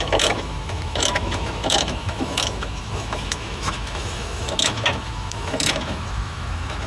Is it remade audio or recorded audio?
remade